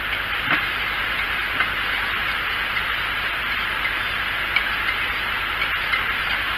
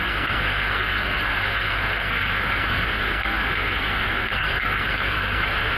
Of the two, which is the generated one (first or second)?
second